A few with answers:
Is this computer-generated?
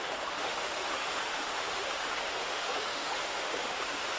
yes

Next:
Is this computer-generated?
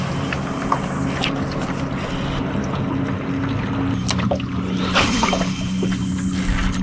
no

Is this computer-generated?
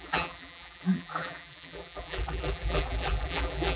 yes